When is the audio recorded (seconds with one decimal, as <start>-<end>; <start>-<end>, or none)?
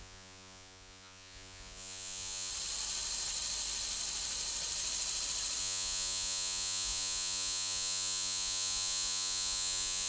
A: 2.5-5.6